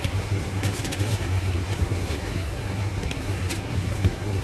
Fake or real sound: fake